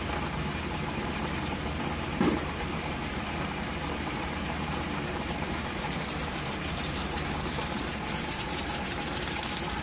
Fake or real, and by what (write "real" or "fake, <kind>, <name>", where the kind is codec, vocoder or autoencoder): fake, vocoder, BigVGAN v2